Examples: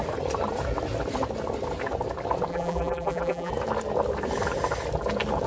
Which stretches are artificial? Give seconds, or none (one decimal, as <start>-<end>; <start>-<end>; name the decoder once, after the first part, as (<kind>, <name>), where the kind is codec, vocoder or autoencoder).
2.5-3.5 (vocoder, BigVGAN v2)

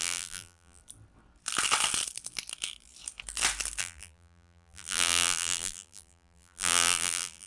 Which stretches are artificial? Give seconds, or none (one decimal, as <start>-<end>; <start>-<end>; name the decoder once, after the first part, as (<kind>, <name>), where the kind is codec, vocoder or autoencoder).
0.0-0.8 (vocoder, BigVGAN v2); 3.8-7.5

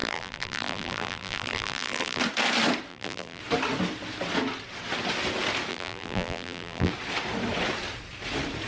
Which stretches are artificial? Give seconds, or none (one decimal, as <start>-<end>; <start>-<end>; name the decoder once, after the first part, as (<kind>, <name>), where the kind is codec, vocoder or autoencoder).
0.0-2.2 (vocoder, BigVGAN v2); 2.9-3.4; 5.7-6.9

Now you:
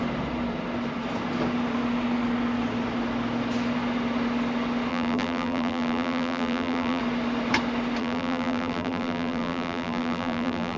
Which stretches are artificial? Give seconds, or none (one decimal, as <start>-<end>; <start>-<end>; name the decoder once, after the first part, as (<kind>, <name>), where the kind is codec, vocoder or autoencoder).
4.9-7.0 (vocoder, BigVGAN v2); 8.0-10.8

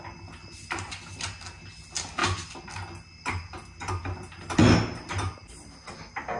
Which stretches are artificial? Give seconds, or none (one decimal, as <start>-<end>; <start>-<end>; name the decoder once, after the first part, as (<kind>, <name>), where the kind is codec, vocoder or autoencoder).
none

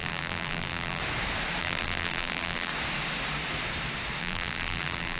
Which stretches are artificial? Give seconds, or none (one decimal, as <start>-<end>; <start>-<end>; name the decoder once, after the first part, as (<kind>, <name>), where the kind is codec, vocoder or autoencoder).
0.0-1.0 (vocoder, BigVGAN v2); 1.6-2.7; 4.2-5.2

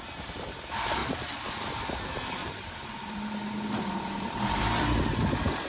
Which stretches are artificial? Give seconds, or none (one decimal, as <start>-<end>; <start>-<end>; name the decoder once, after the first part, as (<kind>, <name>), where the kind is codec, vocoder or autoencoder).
1.0-1.5 (vocoder, BigVGAN v2); 2.4-4.6